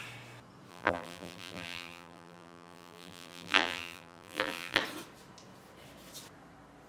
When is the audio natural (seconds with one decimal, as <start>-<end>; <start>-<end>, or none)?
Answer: 0.0-0.7; 4.8-6.9